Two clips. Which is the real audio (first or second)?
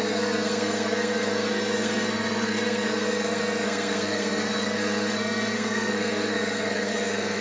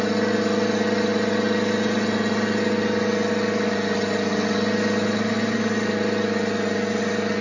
second